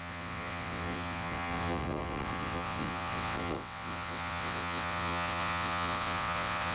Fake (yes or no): yes